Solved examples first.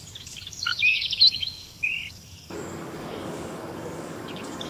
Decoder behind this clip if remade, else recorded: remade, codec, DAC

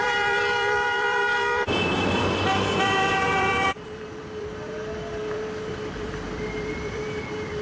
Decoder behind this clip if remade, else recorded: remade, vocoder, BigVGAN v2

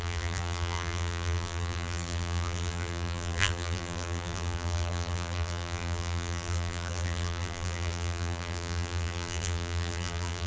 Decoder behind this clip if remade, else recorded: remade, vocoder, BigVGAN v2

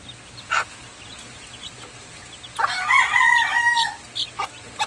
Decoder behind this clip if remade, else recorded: recorded